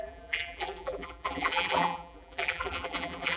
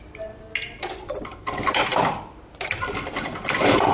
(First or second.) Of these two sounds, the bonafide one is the second